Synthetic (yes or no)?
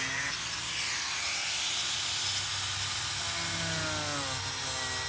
no